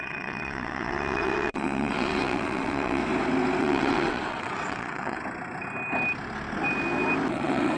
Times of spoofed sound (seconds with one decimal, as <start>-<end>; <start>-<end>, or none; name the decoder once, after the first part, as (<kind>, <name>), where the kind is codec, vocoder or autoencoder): 0.0-3.0 (vocoder, WaveNeXt); 3.6-5.2; 7.3-7.8